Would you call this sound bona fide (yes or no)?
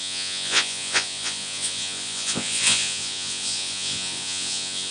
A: no